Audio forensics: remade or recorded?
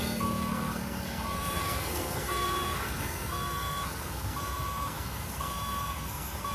remade